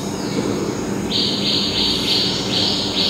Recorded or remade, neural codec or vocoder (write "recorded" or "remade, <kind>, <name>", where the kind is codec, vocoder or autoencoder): recorded